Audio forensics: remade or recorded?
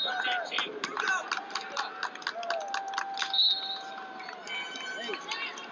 recorded